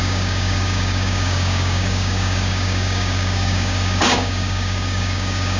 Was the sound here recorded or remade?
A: remade